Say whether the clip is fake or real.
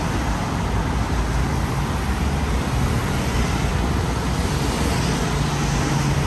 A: real